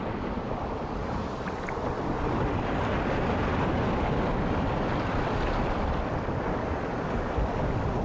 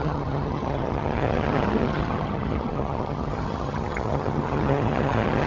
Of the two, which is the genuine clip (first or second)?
first